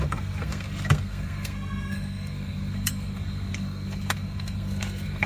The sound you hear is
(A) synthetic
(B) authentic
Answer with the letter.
A